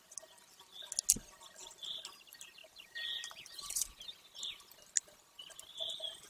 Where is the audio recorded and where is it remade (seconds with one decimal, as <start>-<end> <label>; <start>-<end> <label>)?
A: 0.0-2.6 recorded; 2.6-3.9 remade; 3.9-6.3 recorded